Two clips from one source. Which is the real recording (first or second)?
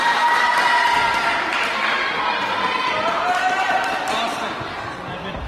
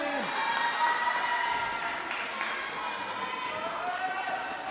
second